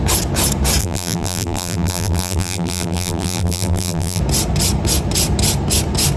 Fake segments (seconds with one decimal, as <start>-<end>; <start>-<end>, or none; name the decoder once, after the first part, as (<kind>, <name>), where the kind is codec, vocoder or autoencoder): 0.8-4.2 (vocoder, BigVGAN v2)